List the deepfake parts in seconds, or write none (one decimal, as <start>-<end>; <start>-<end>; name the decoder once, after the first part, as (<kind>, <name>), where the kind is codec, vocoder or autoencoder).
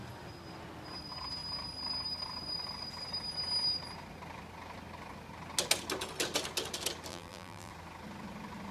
7.1-7.7 (vocoder, BigVGAN v2)